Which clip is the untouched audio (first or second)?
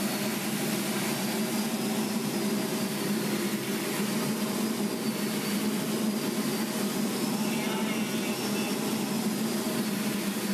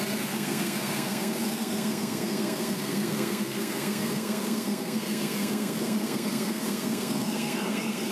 first